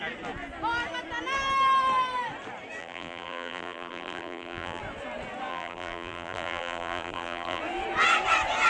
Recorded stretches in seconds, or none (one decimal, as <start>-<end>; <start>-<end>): 0.0-2.8; 4.8-5.5; 7.6-8.7